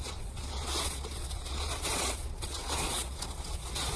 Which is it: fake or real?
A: fake